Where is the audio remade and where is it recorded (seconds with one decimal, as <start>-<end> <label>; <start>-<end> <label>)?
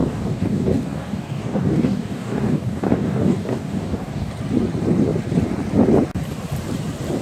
0.0-4.3 remade; 4.3-7.2 recorded